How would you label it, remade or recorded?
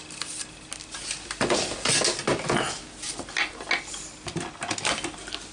recorded